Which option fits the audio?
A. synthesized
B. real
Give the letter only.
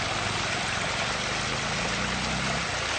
B